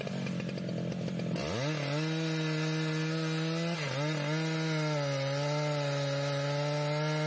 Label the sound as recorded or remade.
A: recorded